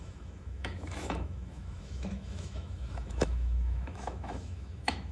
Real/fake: fake